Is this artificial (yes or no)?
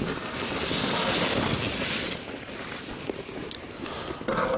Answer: no